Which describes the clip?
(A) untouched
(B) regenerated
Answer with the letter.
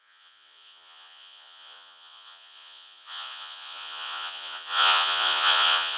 B